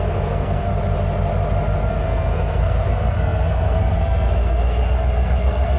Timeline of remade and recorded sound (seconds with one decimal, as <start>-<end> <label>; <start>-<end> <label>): 0.0-0.7 remade; 0.7-1.9 recorded; 1.9-5.8 remade